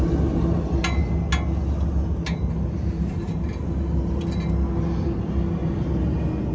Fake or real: real